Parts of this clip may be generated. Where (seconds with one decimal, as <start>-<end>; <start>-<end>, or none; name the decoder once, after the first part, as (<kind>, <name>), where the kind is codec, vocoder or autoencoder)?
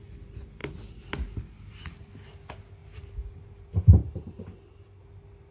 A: none